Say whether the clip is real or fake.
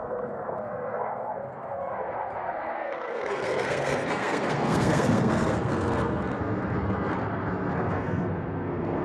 fake